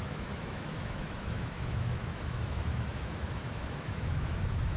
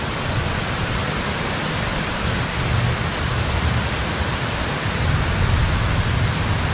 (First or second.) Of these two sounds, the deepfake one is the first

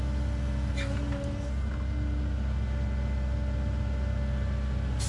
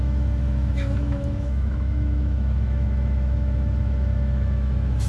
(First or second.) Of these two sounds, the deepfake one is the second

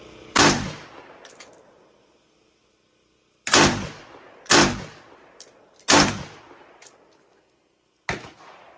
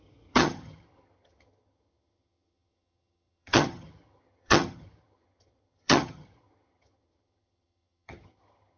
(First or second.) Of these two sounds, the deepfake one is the second